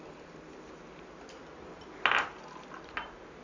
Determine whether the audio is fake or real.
real